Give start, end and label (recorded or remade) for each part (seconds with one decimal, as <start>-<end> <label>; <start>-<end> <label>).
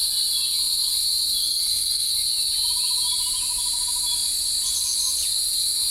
0.0-1.4 recorded; 1.4-2.1 remade; 2.1-5.9 recorded